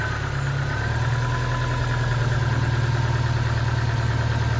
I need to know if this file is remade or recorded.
recorded